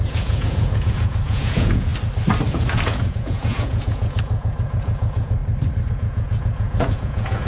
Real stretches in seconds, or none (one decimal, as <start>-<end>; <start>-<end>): 1.9-2.5; 5.4-5.9